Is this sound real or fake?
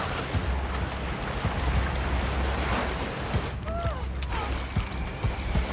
real